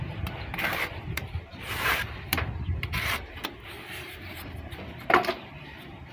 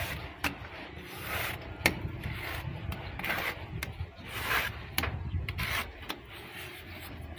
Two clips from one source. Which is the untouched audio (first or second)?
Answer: second